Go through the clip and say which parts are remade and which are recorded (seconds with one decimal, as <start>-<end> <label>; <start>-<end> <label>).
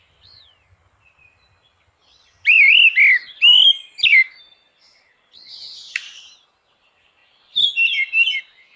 0.0-8.8 remade